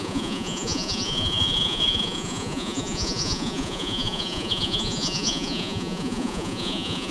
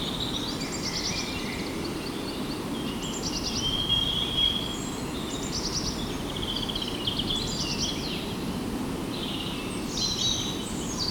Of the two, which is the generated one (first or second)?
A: first